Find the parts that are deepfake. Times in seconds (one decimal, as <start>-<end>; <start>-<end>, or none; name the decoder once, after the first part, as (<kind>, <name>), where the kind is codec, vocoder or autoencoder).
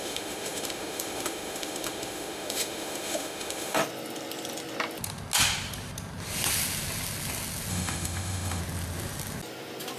0.0-3.8 (autoencoder, DAC-VAE); 7.7-8.6